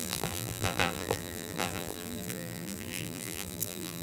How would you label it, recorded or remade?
remade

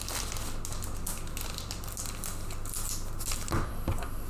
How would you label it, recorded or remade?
recorded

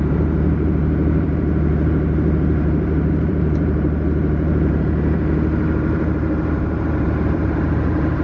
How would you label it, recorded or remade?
remade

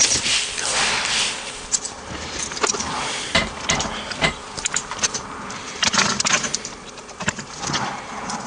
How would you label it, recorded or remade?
remade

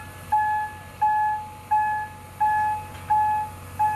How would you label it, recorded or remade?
recorded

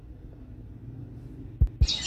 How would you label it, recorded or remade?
recorded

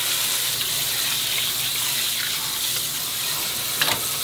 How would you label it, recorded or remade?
recorded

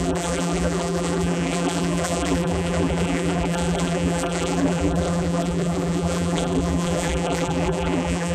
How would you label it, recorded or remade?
remade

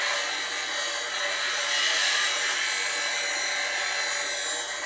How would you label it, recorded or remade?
recorded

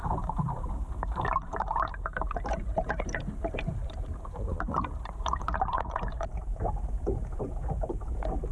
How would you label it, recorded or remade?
remade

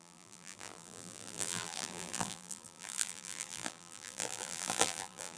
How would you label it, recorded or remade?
remade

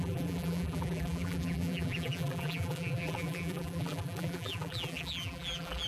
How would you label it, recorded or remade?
remade